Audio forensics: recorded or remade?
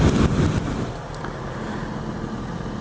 recorded